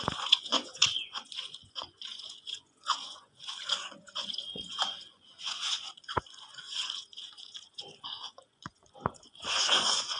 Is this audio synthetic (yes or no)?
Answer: yes